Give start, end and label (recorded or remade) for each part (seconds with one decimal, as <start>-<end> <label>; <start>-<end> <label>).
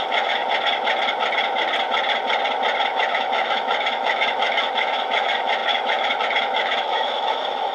0.0-0.4 remade; 0.4-2.8 recorded; 2.8-7.7 remade